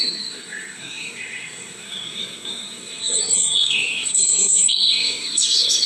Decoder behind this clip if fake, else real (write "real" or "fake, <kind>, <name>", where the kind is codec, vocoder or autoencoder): fake, codec, SNAC